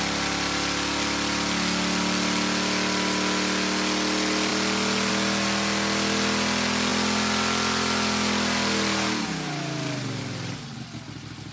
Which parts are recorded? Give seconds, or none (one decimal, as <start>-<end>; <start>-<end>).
0.0-11.5